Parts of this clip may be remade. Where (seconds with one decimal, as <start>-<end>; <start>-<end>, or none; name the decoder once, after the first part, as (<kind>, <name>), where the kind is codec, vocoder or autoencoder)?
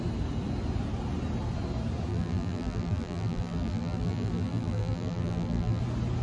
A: 2.1-5.8 (vocoder, BigVGAN v2)